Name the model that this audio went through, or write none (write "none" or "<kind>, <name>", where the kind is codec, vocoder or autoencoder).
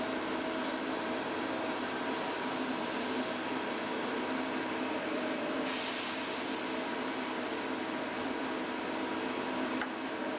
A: none